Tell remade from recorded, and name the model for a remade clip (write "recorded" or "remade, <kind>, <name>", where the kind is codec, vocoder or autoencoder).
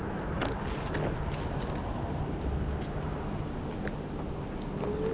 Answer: recorded